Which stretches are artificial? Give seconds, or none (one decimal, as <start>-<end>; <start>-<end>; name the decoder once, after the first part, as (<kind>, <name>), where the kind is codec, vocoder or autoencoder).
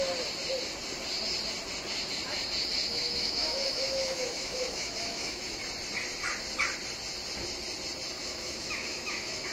2.9-5.6 (autoencoder, DAC-VAE); 8.2-9.5